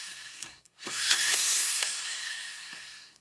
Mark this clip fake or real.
fake